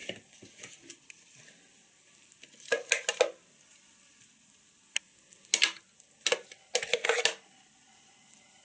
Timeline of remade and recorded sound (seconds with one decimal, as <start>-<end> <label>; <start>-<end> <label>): 0.0-8.6 recorded